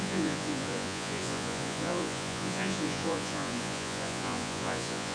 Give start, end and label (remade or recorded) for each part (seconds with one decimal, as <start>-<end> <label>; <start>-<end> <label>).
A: 0.0-5.1 remade